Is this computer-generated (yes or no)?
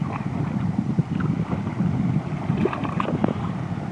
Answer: no